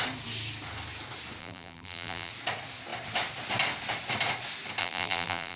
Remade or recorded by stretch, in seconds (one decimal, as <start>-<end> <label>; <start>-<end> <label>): 0.0-1.4 recorded; 1.4-2.3 remade; 2.3-4.8 recorded; 4.8-5.6 remade